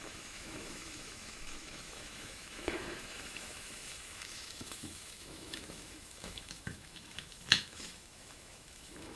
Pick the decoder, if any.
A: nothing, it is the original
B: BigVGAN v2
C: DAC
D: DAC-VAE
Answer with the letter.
D